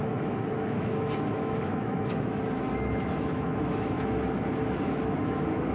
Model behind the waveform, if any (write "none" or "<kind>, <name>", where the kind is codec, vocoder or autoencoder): autoencoder, DAC-VAE